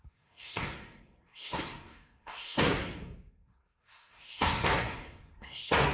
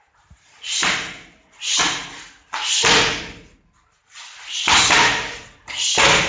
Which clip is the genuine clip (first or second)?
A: second